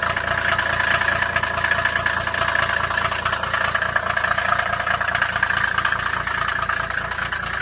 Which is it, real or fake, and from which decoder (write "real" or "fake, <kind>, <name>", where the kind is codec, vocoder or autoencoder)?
real